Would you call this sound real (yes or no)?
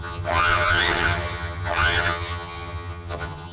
no